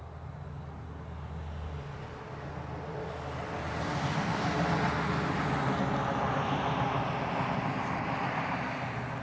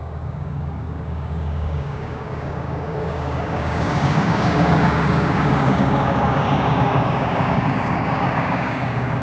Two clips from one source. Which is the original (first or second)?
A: first